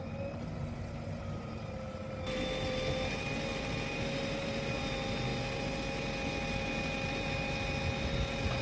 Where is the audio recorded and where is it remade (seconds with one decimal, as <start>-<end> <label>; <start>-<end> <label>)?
0.0-8.6 recorded